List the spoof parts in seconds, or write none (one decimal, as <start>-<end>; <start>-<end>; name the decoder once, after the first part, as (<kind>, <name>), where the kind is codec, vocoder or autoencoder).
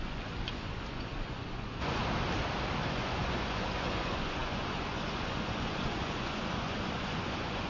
0.0-2.0 (vocoder, Vocos); 2.9-7.7